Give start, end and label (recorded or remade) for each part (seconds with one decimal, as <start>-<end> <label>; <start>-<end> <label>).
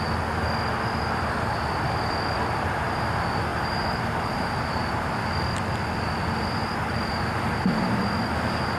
0.0-3.5 recorded; 3.5-4.9 remade; 4.9-8.8 recorded